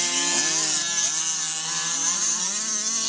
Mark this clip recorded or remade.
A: recorded